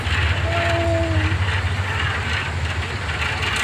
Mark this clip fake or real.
real